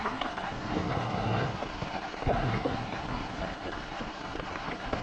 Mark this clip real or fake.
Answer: fake